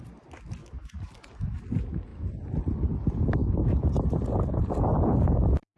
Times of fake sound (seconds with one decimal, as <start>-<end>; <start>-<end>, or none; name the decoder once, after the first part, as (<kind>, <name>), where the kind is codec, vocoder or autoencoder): 0.6-1.6 (codec, DAC); 3.4-3.9